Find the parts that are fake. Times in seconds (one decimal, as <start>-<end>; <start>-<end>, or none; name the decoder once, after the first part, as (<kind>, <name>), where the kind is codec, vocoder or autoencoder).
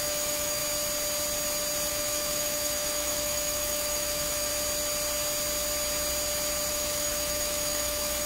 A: 0.0-0.6 (autoencoder, DAC-VAE); 1.9-4.5; 6.7-8.3